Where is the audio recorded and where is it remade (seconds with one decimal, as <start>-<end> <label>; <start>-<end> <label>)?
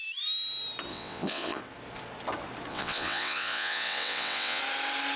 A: 0.0-0.9 recorded; 0.9-1.6 remade; 1.6-2.7 recorded; 2.7-4.6 remade; 4.6-5.2 recorded